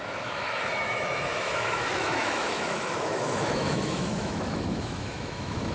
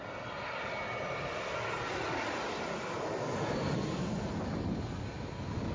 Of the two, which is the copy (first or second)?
first